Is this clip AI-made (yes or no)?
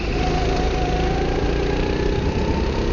no